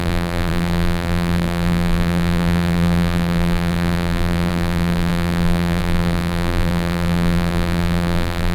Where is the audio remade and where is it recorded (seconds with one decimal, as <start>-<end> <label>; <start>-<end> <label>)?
0.0-8.5 remade